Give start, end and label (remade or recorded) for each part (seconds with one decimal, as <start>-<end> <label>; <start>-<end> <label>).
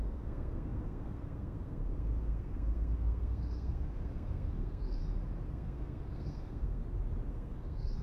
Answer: 0.0-5.0 remade; 5.0-5.5 recorded; 5.5-6.8 remade; 6.8-7.3 recorded; 7.3-8.0 remade